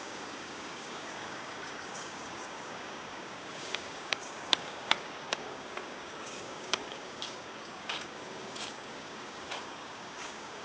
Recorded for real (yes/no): no